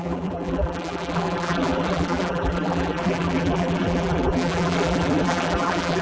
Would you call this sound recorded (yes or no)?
no